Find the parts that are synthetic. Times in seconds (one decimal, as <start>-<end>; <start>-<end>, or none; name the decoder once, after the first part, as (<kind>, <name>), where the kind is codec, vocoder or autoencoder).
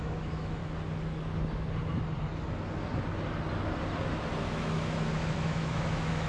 0.0-0.6 (autoencoder, DAC-VAE); 4.4-6.3